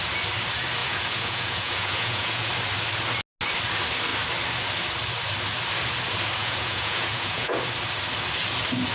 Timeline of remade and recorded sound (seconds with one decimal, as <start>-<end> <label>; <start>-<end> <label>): 0.0-0.8 recorded; 0.8-2.5 remade; 2.5-6.4 recorded; 6.4-7.6 remade; 7.6-8.9 recorded